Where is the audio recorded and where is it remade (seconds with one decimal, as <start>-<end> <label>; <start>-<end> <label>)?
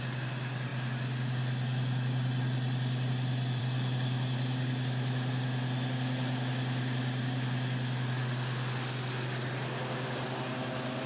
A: 0.0-11.1 recorded